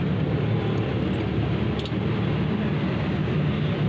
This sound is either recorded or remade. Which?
recorded